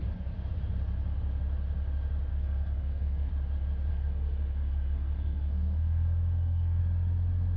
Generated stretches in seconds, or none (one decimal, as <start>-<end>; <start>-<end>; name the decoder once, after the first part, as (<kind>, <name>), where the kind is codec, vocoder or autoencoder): 2.3-3.3 (codec, SNAC); 3.9-6.8